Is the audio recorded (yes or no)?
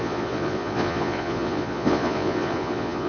no